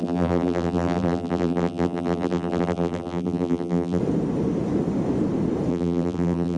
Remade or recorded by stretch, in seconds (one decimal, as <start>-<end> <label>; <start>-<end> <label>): 0.0-4.0 remade; 4.0-5.7 recorded; 5.7-6.6 remade